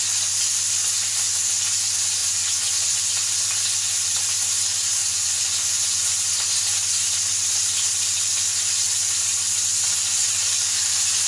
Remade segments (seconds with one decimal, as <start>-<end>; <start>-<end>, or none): 2.2-3.1; 5.0-6.3